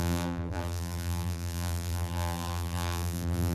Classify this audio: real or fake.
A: fake